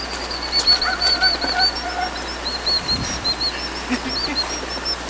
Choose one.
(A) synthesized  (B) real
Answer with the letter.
B